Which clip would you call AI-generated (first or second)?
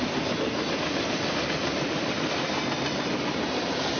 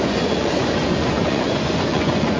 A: second